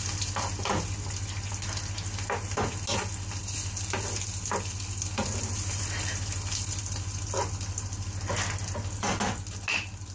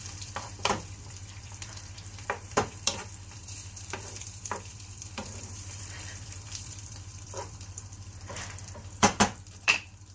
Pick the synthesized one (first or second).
second